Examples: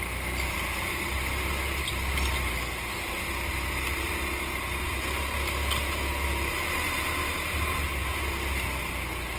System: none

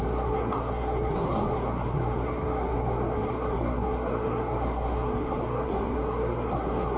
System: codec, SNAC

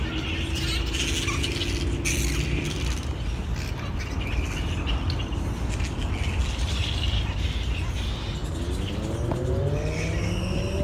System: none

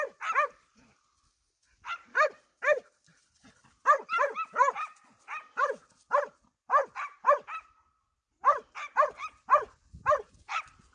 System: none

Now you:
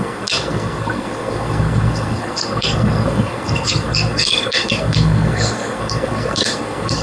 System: codec, SNAC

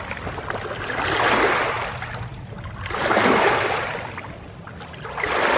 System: none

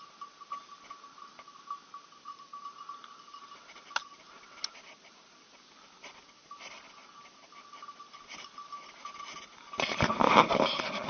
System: none